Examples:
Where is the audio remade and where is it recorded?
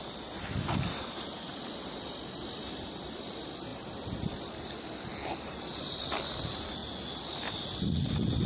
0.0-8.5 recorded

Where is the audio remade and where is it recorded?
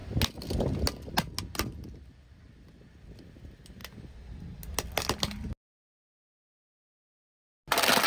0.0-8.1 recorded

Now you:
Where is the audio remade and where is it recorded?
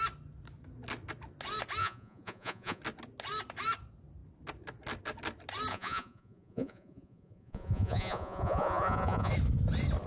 0.0-1.8 recorded; 1.8-2.8 remade; 2.8-5.7 recorded; 5.7-9.3 remade; 9.3-10.1 recorded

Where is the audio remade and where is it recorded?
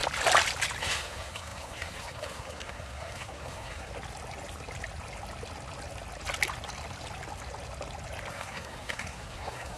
0.0-0.8 recorded; 0.8-3.9 remade; 3.9-8.3 recorded; 8.3-9.8 remade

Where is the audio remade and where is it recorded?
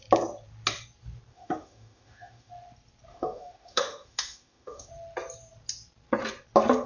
0.0-1.3 recorded; 1.3-2.5 remade; 2.5-3.1 recorded; 3.1-4.9 remade; 4.9-6.9 recorded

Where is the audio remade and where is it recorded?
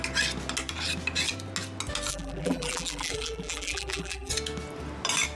0.0-2.1 recorded; 2.1-4.3 remade; 4.3-5.4 recorded